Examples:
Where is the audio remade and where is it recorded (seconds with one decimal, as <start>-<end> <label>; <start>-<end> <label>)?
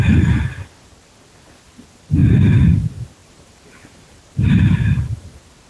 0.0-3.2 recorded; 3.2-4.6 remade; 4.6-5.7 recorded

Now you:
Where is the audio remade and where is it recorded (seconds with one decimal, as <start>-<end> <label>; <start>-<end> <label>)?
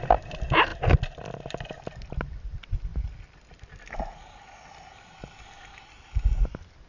0.0-6.9 recorded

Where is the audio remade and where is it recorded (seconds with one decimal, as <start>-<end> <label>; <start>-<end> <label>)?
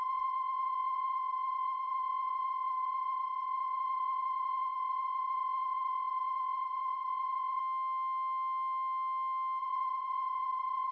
0.0-7.6 remade; 7.6-9.6 recorded; 9.6-10.9 remade